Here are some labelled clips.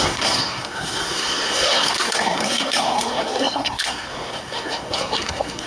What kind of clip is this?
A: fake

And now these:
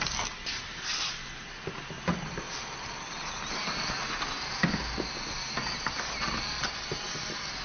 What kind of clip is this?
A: real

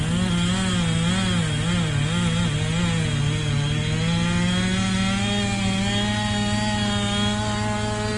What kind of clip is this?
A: real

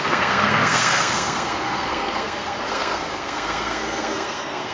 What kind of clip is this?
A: fake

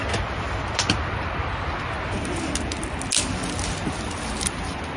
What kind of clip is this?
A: real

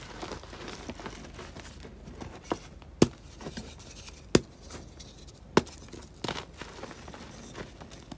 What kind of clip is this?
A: real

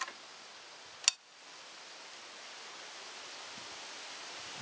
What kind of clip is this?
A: real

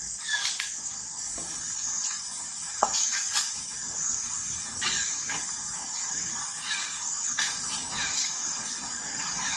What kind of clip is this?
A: fake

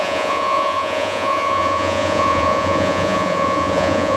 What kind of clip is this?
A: fake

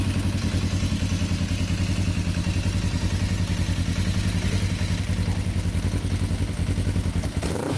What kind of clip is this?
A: real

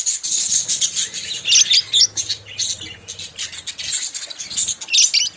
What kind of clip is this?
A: real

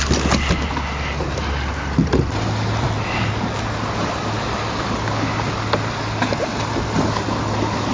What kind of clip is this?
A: real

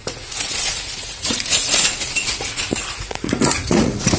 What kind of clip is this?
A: fake